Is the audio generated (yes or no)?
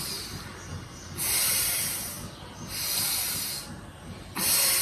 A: no